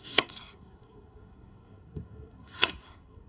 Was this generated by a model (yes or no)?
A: yes